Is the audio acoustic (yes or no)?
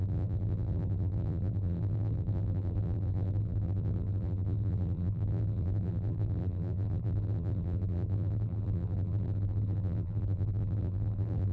no